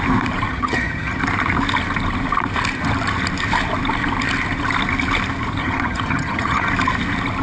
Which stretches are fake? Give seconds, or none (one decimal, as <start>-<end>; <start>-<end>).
0.5-1.2; 5.6-6.7